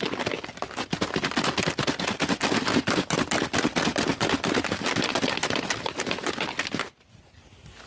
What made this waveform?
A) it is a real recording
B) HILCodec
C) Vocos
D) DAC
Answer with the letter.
A